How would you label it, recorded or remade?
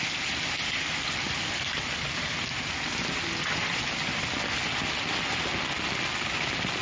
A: recorded